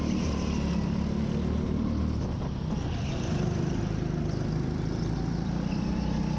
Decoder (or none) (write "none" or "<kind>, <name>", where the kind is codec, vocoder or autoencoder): none